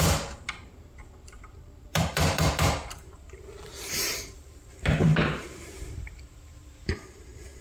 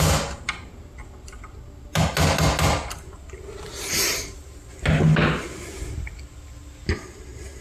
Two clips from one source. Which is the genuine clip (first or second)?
second